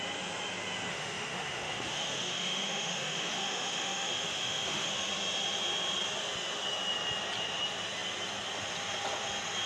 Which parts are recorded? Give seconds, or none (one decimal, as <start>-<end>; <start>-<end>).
0.0-0.9; 4.9-9.7